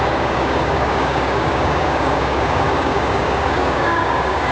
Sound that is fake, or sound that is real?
fake